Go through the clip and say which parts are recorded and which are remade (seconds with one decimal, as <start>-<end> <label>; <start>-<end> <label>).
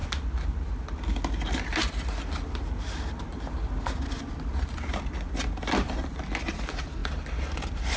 0.0-8.0 recorded